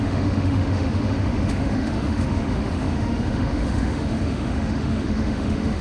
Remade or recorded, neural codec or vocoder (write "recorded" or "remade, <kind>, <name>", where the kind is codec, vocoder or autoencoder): remade, autoencoder, DAC-VAE